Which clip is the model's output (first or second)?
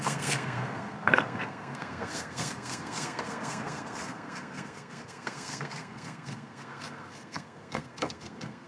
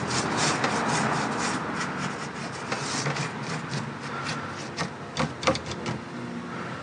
first